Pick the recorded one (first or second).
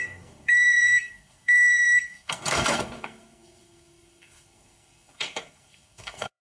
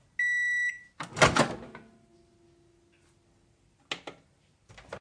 second